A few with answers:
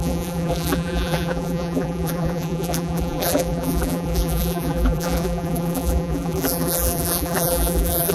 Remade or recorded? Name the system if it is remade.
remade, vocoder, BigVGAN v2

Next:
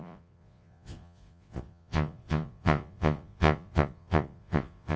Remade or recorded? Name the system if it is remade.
remade, vocoder, Vocos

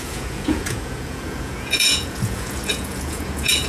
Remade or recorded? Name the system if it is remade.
remade, vocoder, Vocos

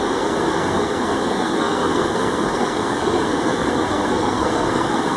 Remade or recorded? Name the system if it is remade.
remade, codec, SNAC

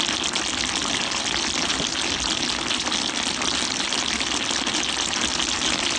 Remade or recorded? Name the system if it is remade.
recorded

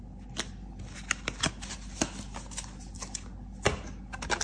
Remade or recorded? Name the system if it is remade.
recorded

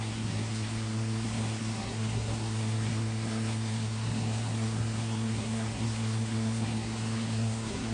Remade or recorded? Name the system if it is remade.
remade, codec, SNAC